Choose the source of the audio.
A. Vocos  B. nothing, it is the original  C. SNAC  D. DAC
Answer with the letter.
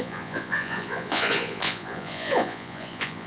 A